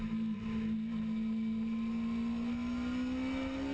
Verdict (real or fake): real